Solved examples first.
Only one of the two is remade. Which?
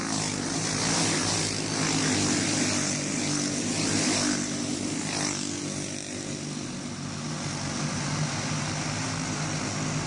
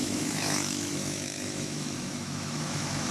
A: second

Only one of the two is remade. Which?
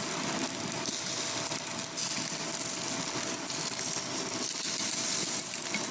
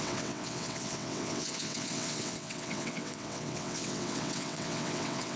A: second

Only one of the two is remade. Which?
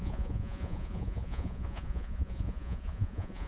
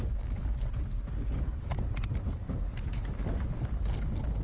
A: first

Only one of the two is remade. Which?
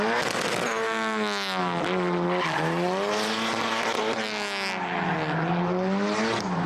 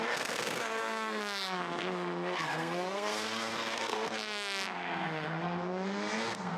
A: second